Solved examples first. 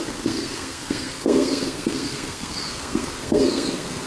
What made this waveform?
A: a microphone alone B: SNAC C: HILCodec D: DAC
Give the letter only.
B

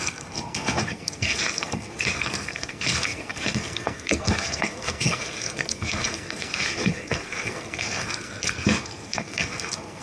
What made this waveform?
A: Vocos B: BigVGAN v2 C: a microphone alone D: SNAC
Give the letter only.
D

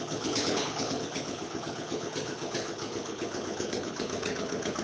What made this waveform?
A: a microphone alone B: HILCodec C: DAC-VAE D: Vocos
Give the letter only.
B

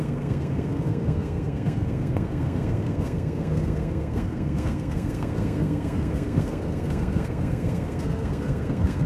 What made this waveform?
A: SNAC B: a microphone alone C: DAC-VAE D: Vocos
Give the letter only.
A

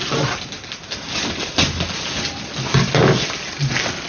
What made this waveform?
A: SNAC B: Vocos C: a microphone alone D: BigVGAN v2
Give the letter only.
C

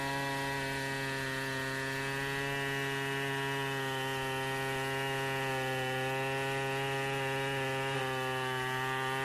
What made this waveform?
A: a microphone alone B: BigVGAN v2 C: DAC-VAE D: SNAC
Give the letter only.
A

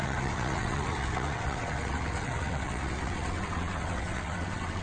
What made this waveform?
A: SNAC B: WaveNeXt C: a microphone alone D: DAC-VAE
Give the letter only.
B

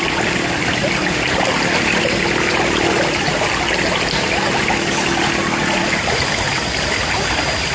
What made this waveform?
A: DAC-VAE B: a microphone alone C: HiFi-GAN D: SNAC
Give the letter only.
B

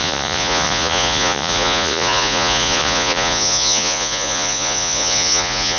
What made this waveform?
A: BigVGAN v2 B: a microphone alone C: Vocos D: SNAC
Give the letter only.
C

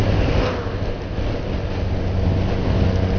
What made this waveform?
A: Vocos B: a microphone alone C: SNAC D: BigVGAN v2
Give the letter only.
B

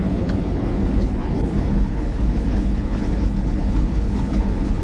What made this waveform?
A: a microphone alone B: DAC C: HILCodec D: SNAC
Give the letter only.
C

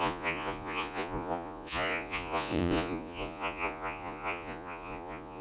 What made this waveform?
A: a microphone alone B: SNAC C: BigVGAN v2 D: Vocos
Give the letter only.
D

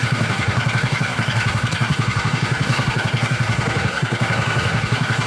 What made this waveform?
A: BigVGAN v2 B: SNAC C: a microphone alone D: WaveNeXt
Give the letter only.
B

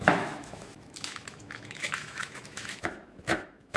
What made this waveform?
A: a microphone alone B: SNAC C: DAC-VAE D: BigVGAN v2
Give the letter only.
C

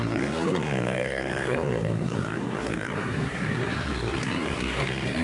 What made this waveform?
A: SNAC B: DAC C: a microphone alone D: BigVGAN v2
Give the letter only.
A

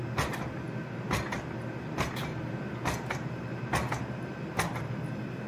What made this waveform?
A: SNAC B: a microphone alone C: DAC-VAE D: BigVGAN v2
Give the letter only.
B